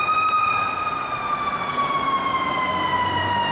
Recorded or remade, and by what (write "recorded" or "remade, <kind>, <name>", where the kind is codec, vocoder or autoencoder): recorded